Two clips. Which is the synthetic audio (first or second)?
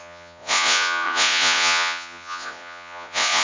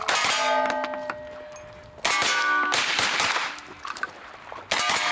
first